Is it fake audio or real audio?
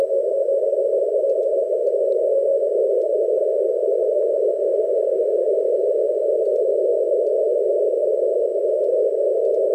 real